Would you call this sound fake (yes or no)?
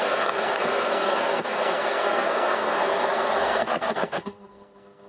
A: yes